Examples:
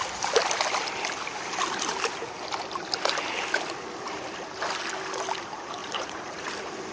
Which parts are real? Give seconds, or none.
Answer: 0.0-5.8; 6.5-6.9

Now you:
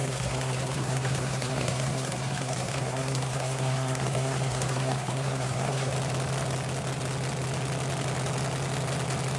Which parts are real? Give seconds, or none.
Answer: 5.9-9.4

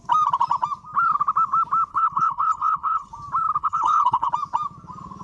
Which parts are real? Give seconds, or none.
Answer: 0.0-1.9; 3.1-3.6; 4.3-5.2

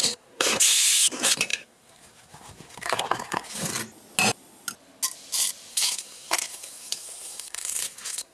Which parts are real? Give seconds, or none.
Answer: 3.7-5.7

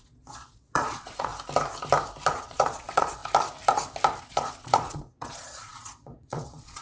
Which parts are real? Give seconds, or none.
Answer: 1.3-2.3; 3.2-4.2

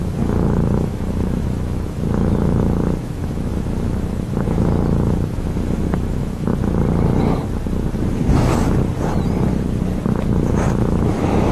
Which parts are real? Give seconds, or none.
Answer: 6.5-10.5